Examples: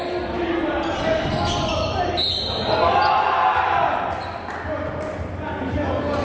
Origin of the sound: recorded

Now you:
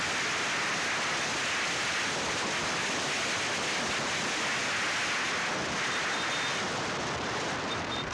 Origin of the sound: recorded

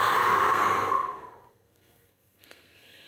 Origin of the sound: remade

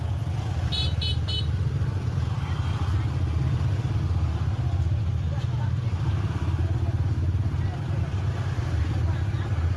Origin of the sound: recorded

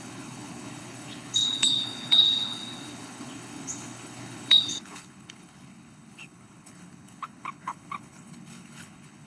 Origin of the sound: remade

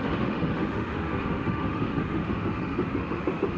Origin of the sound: remade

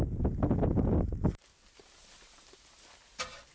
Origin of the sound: recorded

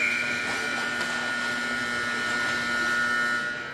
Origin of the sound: recorded